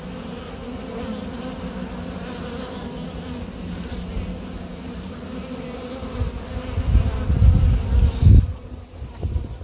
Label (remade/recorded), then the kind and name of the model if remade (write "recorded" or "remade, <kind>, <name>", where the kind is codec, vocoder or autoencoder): recorded